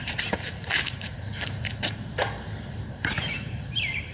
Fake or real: fake